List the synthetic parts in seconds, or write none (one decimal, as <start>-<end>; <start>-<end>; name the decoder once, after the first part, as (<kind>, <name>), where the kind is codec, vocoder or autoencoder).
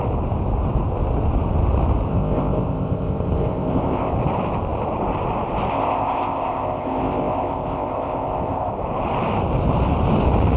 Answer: 2.1-4.1 (codec, ZipCodec); 5.7-8.7